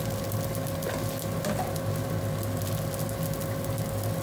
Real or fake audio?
real